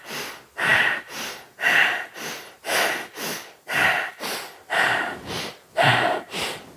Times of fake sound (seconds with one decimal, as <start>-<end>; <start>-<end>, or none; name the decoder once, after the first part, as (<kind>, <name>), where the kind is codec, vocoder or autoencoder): none